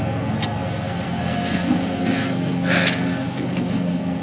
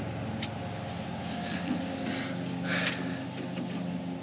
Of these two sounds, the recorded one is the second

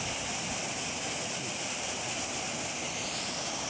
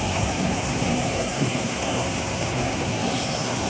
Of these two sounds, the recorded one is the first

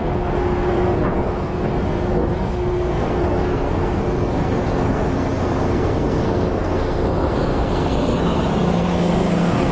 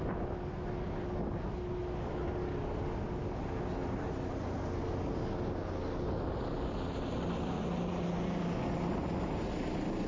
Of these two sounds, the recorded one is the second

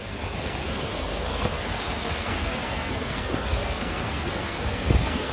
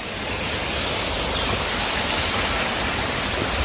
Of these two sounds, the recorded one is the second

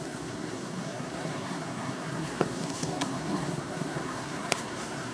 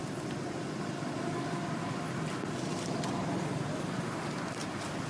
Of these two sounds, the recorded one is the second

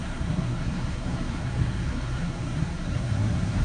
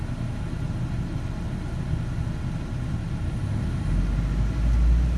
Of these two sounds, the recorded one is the second